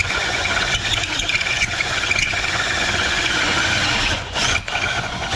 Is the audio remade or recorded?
remade